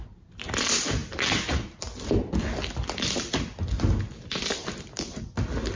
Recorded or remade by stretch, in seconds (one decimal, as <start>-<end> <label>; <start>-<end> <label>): 0.0-5.8 recorded